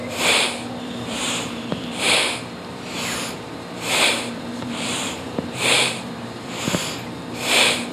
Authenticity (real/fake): fake